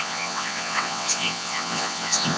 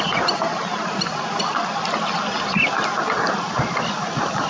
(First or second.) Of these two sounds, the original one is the second